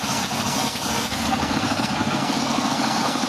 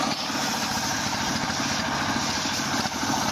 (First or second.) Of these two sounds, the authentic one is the second